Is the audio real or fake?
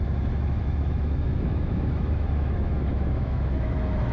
fake